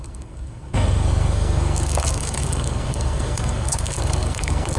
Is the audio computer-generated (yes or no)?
yes